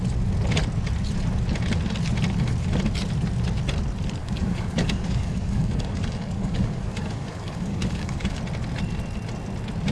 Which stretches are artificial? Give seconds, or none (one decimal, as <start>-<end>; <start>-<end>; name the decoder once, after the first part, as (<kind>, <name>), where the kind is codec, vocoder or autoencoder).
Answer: 4.2-8.4 (codec, DAC)